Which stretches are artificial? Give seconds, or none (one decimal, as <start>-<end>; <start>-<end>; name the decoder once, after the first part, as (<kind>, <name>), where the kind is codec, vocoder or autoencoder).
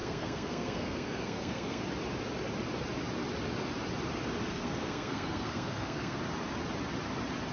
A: 0.0-1.8 (codec, SNAC); 4.5-6.2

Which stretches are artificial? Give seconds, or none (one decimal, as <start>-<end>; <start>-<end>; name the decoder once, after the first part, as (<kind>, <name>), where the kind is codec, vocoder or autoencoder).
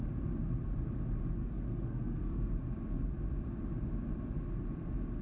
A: 1.4-2.5 (codec, SNAC)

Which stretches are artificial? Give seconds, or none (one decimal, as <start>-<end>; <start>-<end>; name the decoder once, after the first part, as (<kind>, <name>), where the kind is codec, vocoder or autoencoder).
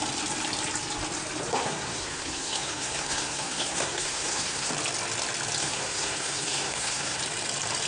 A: 1.5-4.7 (codec, SNAC); 5.6-7.2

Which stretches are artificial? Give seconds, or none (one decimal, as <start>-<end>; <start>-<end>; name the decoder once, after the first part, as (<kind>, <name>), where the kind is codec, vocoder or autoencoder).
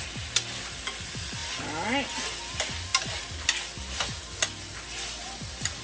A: none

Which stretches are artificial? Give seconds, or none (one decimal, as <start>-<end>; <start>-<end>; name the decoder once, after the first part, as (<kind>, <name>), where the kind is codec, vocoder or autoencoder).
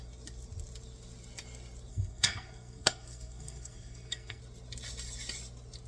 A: 1.9-4.4 (codec, SNAC)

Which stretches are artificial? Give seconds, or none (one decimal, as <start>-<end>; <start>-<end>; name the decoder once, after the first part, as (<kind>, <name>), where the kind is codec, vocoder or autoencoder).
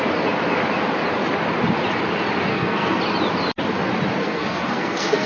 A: 2.5-3.0 (codec, SNAC); 4.2-5.3